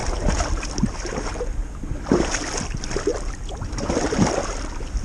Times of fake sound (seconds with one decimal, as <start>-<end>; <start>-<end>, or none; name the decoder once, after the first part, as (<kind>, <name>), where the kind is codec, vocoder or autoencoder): none

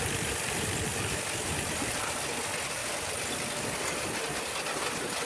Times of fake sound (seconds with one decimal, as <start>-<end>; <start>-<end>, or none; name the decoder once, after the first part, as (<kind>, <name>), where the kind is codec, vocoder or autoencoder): 0.9-1.9 (vocoder, BigVGAN v2); 2.8-3.4

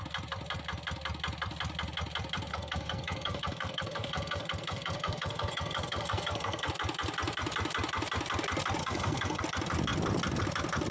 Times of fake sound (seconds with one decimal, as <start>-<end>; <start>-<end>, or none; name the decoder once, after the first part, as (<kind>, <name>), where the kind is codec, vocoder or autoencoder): 2.5-6.7 (codec, SNAC); 8.8-9.4

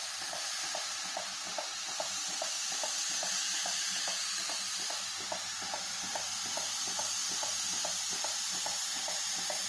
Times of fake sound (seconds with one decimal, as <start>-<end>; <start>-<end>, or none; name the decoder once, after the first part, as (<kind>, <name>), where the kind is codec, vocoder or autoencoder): 7.2-7.9 (vocoder, BigVGAN v2)

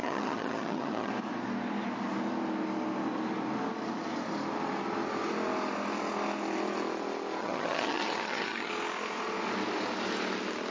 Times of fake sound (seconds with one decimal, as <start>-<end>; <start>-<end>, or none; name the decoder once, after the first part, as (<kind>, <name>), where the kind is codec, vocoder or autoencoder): 0.0-1.1 (vocoder, HiFi-GAN); 7.4-8.7

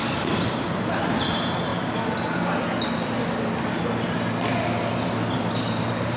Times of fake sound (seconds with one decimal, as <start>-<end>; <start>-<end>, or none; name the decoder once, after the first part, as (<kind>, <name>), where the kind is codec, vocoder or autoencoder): 0.6-1.7 (vocoder, BigVGAN v2); 5.3-6.2

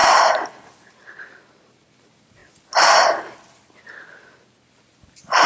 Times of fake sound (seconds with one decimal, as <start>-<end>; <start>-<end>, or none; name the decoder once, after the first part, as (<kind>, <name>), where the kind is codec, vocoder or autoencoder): none

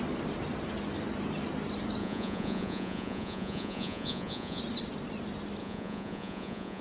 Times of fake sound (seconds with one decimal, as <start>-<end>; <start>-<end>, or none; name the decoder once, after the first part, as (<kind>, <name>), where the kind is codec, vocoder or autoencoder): 2.0-4.6 (vocoder, Vocos); 5.6-6.8